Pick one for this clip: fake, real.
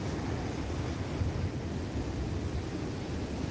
real